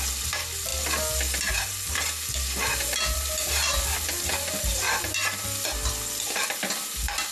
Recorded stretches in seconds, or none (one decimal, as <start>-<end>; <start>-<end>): 0.0-7.3